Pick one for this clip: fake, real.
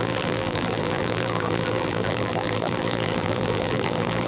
fake